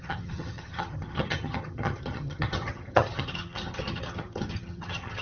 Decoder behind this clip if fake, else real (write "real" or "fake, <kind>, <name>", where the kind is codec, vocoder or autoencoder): fake, vocoder, HiFi-GAN